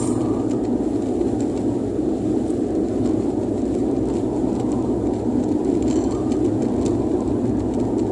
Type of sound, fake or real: real